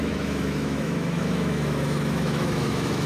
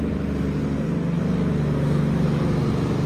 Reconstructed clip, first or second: first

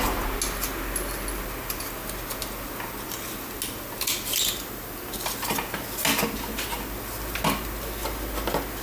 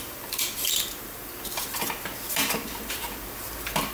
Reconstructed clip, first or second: second